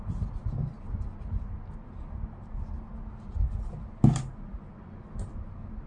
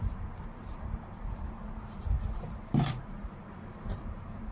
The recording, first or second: first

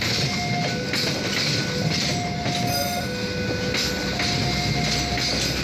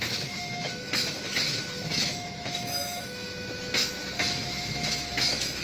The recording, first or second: first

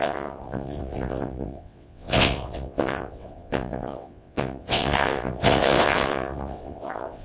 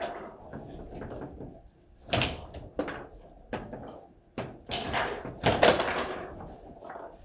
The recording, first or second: second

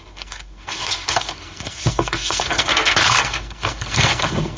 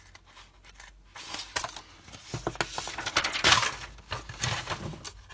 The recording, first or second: second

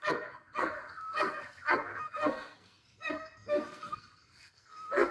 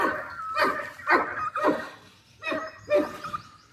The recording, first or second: second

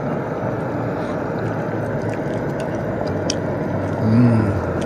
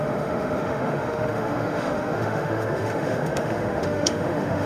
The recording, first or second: first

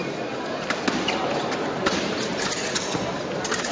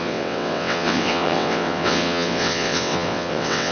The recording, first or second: first